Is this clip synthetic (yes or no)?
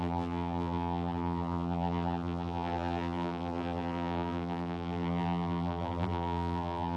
yes